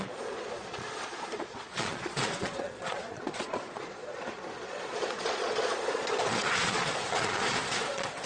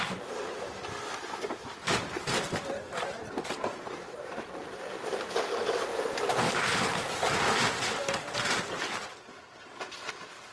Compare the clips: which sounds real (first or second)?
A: second